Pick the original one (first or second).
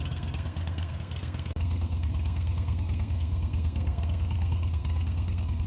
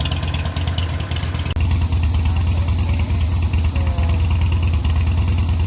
second